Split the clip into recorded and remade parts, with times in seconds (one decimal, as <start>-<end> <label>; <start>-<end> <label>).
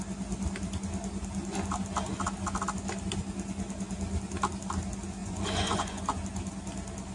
0.0-5.2 recorded; 5.2-6.0 remade; 6.0-7.1 recorded